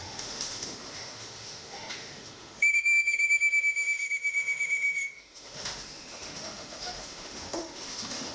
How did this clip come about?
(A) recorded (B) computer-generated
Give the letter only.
B